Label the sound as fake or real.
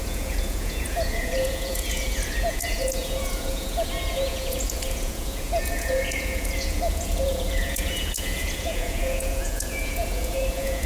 fake